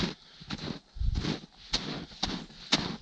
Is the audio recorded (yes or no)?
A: yes